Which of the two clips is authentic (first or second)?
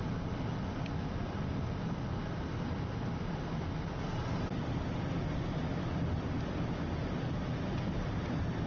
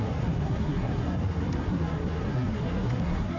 first